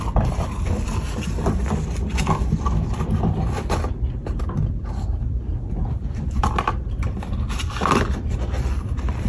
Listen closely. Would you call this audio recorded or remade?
remade